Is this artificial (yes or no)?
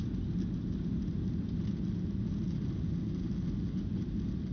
no